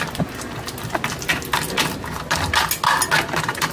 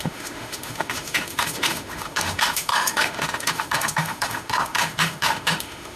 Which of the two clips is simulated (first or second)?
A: second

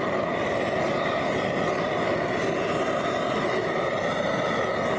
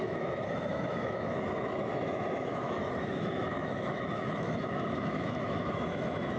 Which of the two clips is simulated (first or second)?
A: second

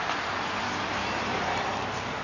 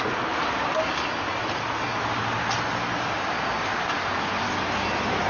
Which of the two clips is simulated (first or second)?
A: first